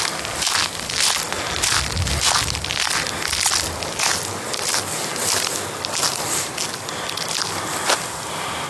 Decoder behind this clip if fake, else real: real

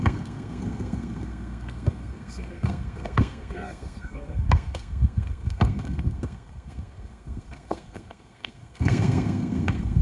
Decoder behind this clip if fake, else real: fake, codec, SNAC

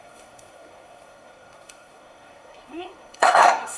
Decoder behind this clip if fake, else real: fake, codec, SNAC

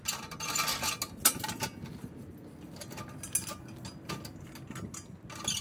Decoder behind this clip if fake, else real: real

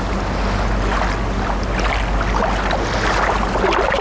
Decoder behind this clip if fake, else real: real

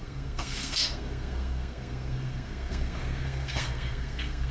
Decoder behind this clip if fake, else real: fake, codec, SNAC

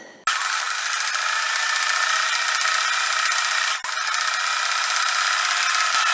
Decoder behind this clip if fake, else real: real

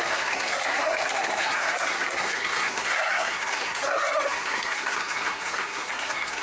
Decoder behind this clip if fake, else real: fake, codec, SNAC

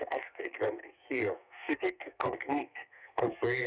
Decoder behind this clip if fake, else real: fake, codec, SNAC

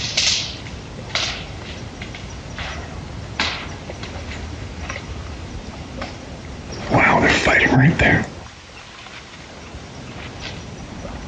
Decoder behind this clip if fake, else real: real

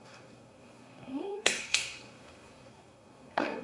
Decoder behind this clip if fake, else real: fake, codec, SNAC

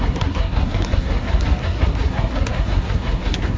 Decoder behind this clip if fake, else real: fake, codec, SNAC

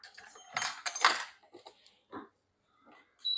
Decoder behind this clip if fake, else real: real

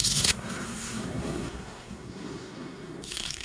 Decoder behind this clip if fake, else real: fake, codec, SNAC